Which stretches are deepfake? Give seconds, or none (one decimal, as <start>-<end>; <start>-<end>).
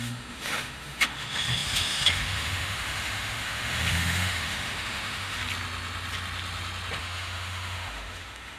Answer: 0.0-5.4; 7.0-8.6